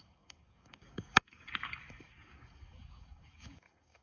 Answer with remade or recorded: remade